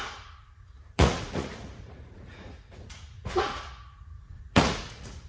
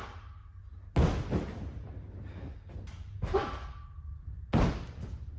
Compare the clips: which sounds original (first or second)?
second